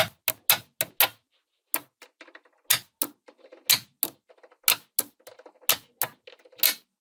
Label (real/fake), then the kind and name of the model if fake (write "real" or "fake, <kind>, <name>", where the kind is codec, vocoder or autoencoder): real